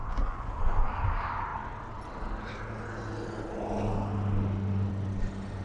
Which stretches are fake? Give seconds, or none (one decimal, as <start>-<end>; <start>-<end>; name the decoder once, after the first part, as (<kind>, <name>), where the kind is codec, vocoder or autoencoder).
0.0-0.8 (vocoder, Vocos)